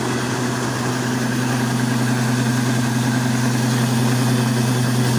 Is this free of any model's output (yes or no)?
yes